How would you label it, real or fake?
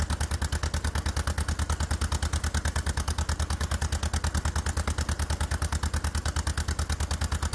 real